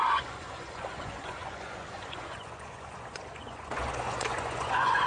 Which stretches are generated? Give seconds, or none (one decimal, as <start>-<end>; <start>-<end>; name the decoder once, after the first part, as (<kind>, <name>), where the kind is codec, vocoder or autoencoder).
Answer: 0.0-5.1 (vocoder, Vocos)